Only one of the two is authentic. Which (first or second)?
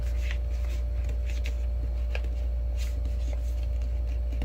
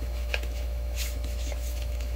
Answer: first